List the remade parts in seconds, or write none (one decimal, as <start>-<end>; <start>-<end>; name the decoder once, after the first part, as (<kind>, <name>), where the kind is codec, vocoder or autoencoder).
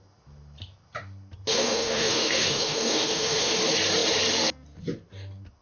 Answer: 1.5-3.6 (autoencoder, DAC-VAE)